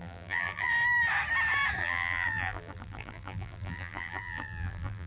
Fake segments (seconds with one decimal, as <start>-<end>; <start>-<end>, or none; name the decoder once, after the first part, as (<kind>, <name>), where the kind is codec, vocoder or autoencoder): 0.0-0.7 (vocoder, BigVGAN v2); 1.8-5.1